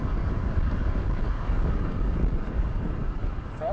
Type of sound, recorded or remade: remade